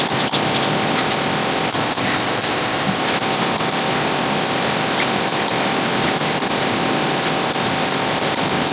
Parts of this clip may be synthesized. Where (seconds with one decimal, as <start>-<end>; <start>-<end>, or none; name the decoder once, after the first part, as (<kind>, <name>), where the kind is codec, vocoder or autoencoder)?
1.7-3.0 (codec, ZipCodec)